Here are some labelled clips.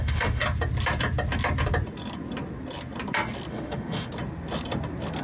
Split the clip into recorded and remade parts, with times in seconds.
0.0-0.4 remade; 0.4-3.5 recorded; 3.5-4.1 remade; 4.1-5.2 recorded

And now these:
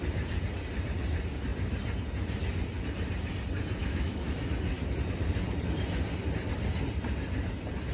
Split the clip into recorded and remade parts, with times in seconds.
0.0-3.8 recorded; 3.8-4.5 remade; 4.5-7.9 recorded

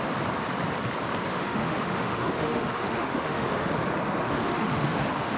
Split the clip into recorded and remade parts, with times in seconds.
0.0-1.3 recorded; 1.3-3.7 remade; 3.7-4.2 recorded; 4.2-5.4 remade

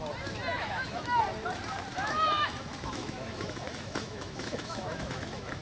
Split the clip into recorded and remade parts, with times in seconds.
0.0-0.5 recorded; 0.5-1.2 remade; 1.2-1.9 recorded; 1.9-5.6 remade